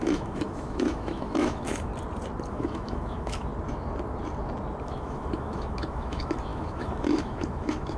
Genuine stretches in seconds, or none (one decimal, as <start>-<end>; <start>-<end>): 1.9-2.5; 3.5-4.8